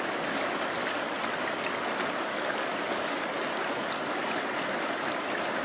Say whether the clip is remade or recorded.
recorded